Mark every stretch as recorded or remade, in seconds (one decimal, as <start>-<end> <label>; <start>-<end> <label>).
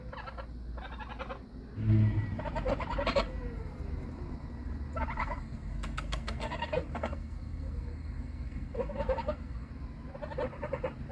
0.0-5.2 recorded; 5.2-9.7 remade; 9.7-11.1 recorded